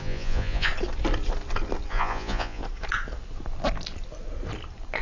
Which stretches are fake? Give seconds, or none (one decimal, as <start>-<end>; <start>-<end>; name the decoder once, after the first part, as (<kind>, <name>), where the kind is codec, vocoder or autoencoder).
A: 0.0-0.7 (vocoder, Vocos); 1.9-2.6